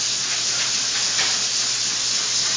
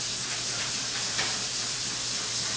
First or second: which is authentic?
first